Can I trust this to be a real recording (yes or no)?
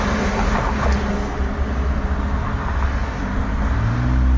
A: yes